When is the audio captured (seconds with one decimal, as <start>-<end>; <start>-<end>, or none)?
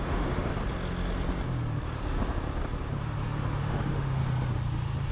0.5-3.6; 4.2-5.1